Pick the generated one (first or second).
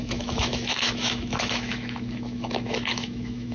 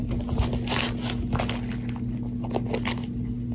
first